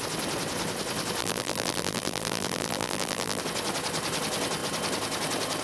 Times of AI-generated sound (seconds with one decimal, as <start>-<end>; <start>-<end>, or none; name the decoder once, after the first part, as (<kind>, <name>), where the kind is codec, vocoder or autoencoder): 1.2-3.4 (vocoder, BigVGAN v2)